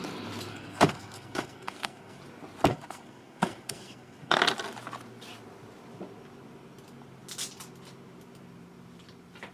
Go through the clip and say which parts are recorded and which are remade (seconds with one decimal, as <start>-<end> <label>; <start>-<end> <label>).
0.0-0.5 recorded; 0.5-2.2 remade; 2.2-2.7 recorded; 2.7-4.4 remade; 4.4-9.5 recorded